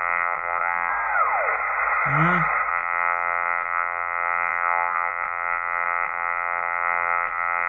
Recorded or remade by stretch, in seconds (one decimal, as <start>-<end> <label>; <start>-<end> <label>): 0.0-0.9 remade; 0.9-2.7 recorded; 2.7-7.7 remade